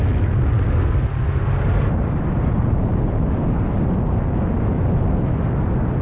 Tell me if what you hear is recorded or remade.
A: recorded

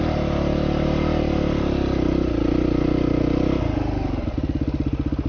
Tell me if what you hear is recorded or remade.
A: recorded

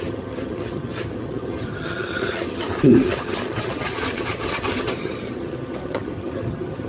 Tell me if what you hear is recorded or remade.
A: remade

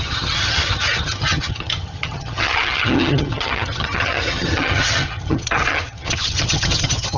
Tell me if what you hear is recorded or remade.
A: remade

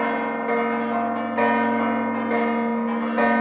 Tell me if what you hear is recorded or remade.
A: recorded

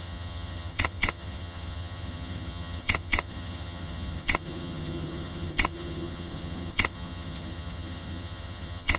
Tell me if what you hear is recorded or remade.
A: remade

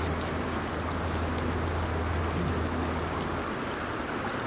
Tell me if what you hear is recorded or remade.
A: recorded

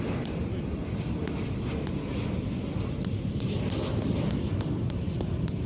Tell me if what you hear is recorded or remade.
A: recorded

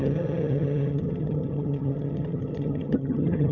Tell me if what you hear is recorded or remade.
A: remade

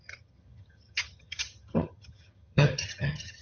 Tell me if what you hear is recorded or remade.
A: remade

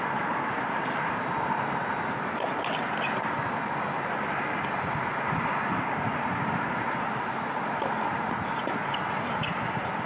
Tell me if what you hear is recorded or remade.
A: recorded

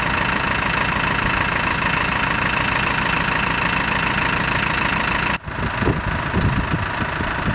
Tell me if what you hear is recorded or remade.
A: recorded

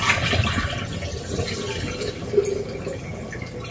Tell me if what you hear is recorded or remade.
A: recorded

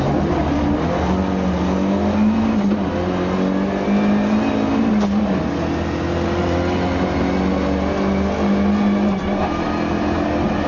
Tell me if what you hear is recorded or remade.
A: recorded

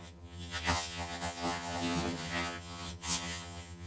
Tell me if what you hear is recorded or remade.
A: remade